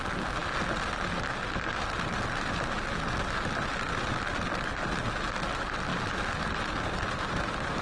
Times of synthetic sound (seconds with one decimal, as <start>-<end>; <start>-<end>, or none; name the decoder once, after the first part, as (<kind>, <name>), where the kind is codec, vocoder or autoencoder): none